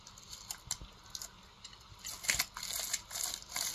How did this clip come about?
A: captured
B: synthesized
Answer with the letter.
A